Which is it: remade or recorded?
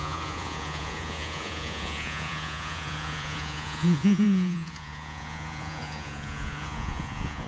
remade